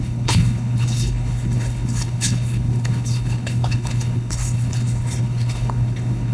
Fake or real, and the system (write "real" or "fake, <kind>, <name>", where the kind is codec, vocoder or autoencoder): fake, codec, HILCodec